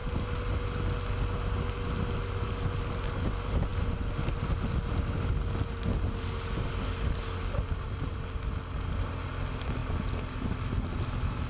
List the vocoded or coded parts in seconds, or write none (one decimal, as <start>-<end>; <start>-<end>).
none